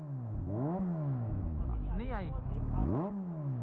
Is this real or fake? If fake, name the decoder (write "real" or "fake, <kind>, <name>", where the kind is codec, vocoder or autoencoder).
fake, autoencoder, DAC-VAE